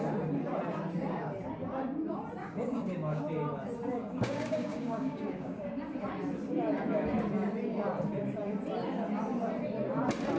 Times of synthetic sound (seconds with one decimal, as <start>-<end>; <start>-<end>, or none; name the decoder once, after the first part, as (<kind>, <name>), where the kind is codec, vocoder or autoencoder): 2.4-3.2 (codec, DAC); 3.9-5.7